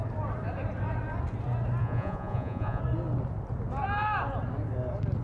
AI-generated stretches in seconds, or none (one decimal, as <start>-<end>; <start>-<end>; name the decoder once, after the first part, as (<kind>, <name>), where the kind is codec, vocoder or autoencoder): 1.8-2.8 (vocoder, Vocos)